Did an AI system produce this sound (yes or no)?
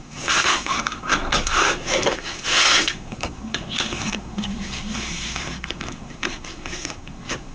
yes